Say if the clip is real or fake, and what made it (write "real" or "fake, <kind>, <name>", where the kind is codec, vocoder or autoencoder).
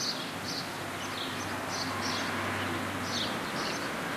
real